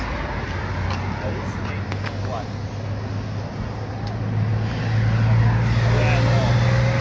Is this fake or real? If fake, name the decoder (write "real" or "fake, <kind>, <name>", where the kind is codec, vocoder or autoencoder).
real